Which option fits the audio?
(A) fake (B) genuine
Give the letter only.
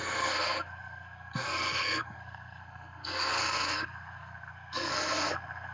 A